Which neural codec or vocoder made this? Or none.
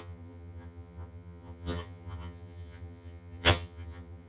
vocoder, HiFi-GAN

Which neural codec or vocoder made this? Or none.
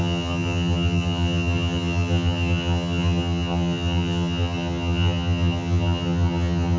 vocoder, HiFi-GAN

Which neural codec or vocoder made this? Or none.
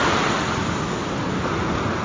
none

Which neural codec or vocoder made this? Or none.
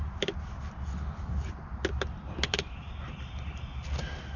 none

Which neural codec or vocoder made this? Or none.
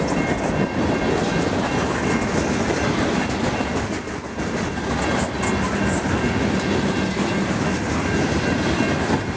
none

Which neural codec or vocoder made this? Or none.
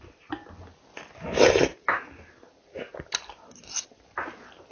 none